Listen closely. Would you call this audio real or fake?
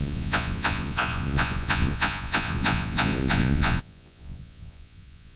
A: fake